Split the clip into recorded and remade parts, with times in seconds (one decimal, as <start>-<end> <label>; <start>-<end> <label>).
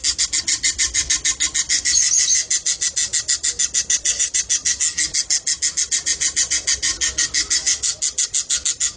0.0-9.0 recorded